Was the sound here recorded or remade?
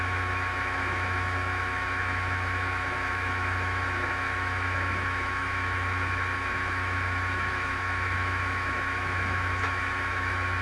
remade